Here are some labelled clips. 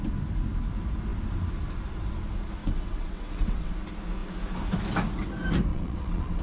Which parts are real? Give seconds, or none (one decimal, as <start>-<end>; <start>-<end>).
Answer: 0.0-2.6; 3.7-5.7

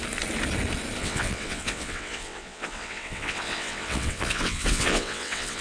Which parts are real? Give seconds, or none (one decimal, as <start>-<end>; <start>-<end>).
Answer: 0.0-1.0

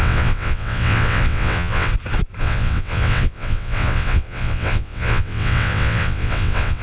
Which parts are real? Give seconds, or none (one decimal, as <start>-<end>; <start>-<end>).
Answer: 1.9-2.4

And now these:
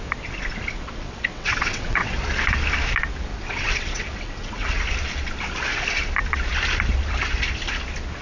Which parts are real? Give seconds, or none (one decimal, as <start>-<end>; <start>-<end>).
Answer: 0.0-0.7; 2.1-3.3; 4.8-8.2

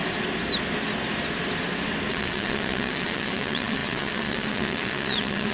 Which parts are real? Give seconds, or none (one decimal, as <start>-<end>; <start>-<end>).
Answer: 0.0-2.1